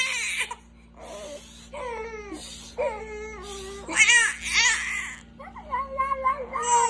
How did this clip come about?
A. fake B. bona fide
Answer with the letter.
B